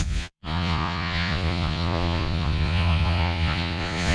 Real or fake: fake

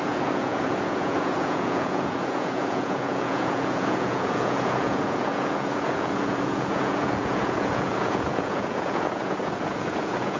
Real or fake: fake